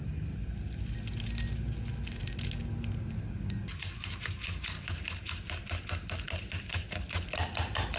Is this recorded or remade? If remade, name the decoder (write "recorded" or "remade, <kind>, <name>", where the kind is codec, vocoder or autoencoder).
recorded